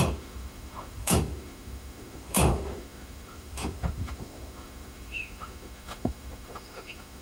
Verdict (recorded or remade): remade